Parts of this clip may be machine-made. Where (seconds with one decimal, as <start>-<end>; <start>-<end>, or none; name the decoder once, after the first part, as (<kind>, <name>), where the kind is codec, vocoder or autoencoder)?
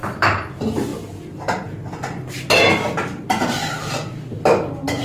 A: none